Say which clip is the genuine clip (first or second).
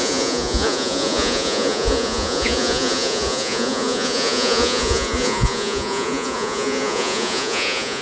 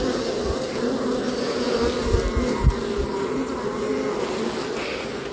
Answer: second